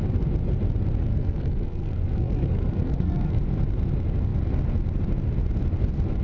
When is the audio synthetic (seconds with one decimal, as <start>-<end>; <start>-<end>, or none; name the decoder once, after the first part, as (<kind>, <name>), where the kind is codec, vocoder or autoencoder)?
1.0-3.4 (codec, SNAC)